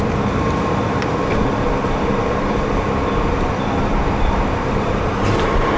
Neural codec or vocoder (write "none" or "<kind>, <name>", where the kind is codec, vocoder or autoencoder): vocoder, BigVGAN v2